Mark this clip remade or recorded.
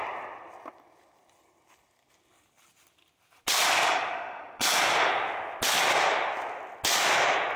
recorded